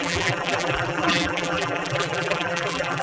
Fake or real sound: fake